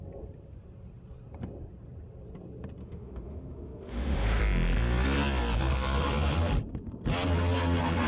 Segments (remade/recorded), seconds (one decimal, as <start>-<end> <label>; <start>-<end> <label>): 0.0-2.8 recorded; 2.8-4.4 remade; 4.4-8.1 recorded